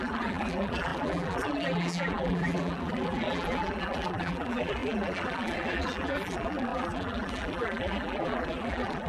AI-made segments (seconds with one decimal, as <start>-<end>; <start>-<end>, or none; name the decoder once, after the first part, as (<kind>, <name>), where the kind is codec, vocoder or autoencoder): 0.0-9.1 (vocoder, BigVGAN v2)